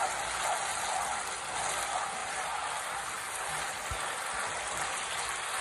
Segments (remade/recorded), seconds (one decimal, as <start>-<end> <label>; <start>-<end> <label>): 0.0-2.2 recorded; 2.2-5.6 remade